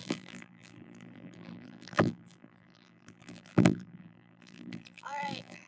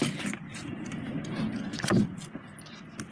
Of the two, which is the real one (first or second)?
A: second